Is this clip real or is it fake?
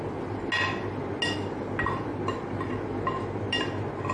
real